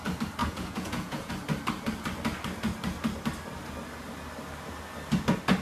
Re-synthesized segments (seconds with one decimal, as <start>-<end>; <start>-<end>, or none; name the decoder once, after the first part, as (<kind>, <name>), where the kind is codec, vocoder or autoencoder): 0.4-1.3 (vocoder, Vocos)